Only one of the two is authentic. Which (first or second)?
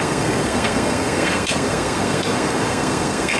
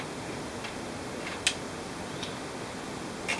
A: second